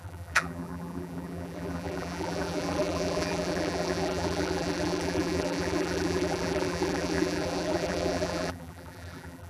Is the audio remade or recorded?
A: remade